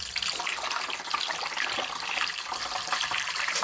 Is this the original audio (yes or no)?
no